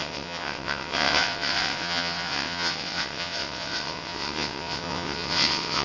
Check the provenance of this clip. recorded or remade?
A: remade